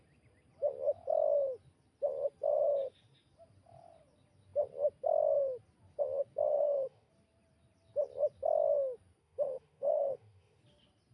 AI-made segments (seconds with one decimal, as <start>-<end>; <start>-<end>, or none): 6.5-7.1; 9.2-10.6